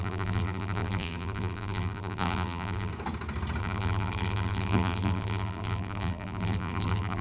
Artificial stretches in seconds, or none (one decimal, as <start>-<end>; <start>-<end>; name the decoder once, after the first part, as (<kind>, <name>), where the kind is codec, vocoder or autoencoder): 0.0-2.9 (vocoder, BigVGAN v2); 3.6-7.2